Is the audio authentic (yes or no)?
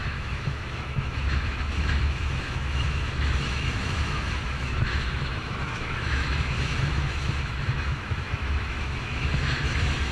no